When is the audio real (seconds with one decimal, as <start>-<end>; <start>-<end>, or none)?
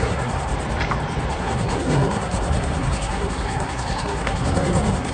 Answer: 0.5-1.3